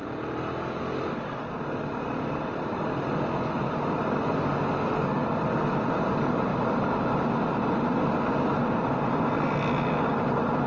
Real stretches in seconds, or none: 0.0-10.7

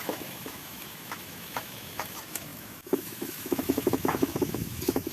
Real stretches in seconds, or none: none